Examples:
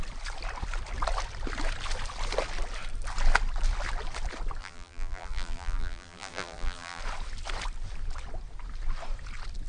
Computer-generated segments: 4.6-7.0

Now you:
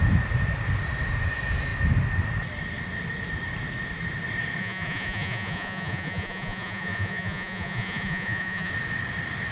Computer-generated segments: 4.6-8.7

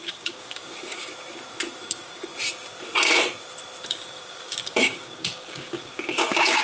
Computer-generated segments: 0.0-1.1; 1.8-2.3; 3.9-6.6

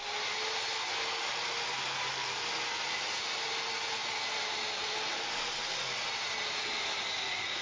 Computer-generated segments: none

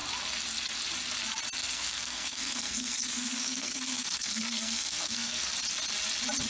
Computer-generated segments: 1.6-5.5

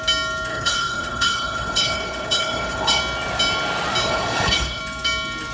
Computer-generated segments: 0.5-3.0; 4.0-4.8

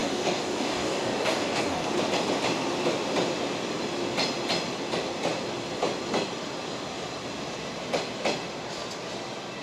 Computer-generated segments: 0.0-1.9